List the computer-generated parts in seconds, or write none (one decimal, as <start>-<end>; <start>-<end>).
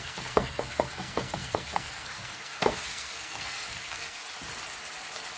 0.0-4.2